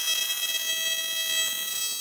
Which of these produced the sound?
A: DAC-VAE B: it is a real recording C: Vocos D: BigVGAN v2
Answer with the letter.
B